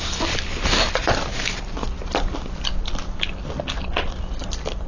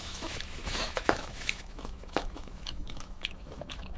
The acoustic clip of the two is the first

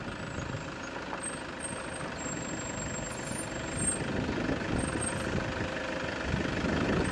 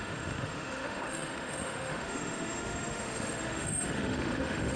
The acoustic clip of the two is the first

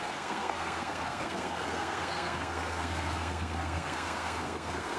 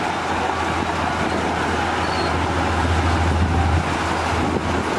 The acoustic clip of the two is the second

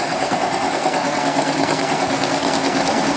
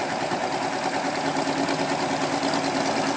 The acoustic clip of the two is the second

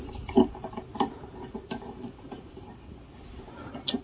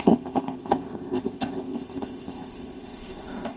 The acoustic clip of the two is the first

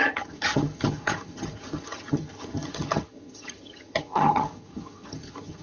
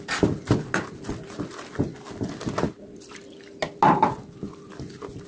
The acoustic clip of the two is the second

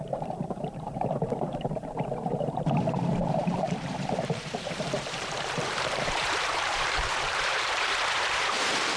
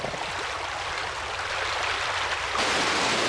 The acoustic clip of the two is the second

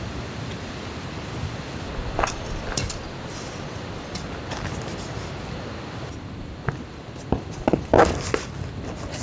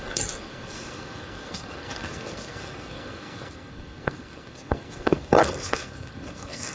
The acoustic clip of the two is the first